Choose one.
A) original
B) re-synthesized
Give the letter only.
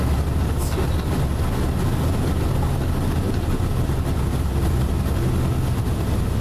A